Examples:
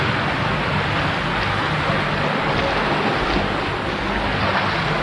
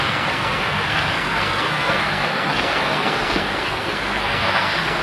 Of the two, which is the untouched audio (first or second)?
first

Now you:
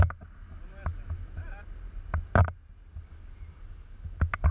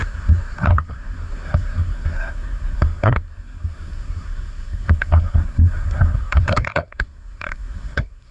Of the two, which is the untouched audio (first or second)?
first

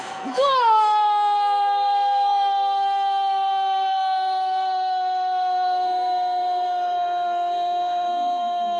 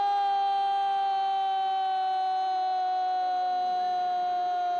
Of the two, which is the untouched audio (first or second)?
second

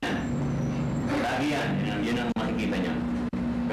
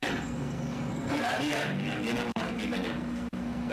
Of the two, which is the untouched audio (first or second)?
first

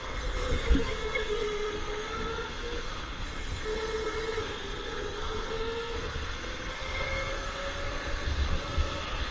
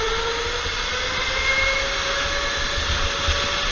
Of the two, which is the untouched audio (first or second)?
second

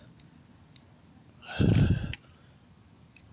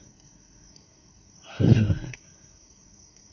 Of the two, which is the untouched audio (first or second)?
first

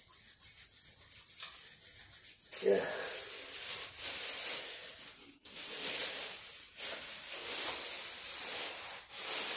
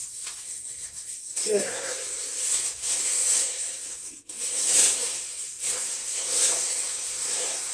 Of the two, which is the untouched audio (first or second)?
first